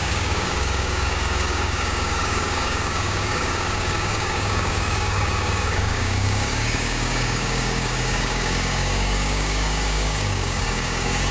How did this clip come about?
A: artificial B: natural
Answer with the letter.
A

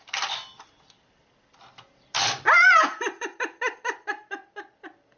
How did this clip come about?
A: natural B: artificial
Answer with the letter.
B